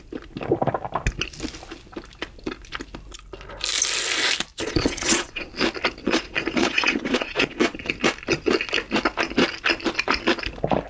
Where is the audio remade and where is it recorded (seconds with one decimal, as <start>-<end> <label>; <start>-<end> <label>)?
0.0-4.5 recorded; 4.5-5.5 remade; 5.5-6.0 recorded; 6.0-7.9 remade; 7.9-10.9 recorded